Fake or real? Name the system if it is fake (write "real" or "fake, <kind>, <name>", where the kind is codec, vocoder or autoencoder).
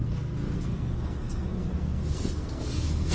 fake, codec, SNAC